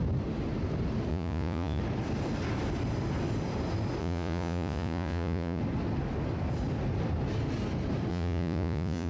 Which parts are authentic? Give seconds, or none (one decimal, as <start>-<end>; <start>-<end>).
0.0-1.1; 1.8-4.0; 5.6-8.1